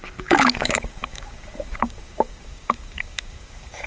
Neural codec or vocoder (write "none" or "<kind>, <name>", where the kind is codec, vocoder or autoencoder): codec, DAC